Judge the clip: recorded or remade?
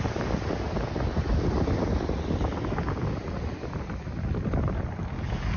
recorded